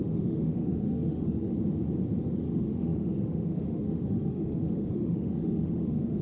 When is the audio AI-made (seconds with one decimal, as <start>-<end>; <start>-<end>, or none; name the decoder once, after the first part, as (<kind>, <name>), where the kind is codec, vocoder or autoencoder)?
0.0-1.5 (autoencoder, DAC-VAE); 2.3-6.2